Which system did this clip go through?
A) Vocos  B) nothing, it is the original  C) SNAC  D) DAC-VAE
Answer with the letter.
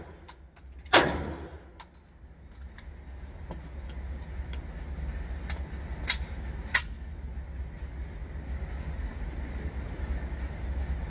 B